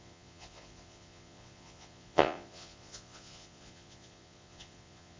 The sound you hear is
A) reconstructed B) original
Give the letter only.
A